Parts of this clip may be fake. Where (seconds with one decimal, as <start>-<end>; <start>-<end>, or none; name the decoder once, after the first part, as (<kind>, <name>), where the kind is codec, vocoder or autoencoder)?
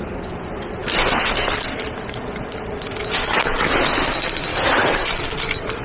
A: 4.5-5.1 (vocoder, BigVGAN v2)